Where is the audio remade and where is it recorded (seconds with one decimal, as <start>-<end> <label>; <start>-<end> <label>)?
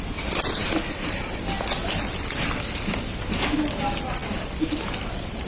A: 0.0-5.5 recorded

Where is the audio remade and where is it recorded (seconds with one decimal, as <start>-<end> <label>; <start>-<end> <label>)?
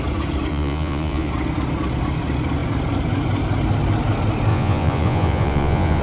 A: 0.0-0.5 recorded; 0.5-1.3 remade; 1.3-4.5 recorded; 4.5-6.0 remade